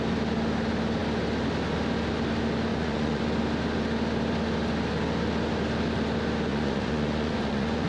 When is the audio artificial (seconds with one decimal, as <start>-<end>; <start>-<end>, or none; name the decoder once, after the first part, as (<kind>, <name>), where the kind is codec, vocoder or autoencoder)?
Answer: 2.7-3.2 (vocoder, Vocos); 6.5-7.9